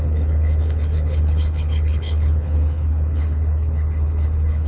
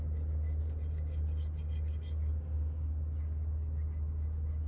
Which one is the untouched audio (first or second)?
second